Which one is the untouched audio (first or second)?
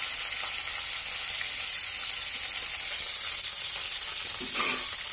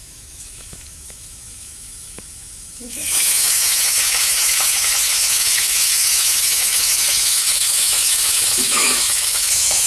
first